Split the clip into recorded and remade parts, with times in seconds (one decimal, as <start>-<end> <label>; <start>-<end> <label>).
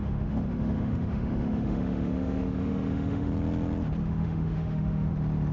0.0-3.3 remade; 3.3-4.0 recorded; 4.0-5.1 remade; 5.1-5.5 recorded